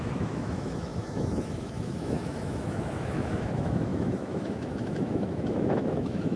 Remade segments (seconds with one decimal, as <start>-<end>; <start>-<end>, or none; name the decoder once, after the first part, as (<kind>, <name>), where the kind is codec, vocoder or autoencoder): 0.0-6.4 (autoencoder, DAC-VAE)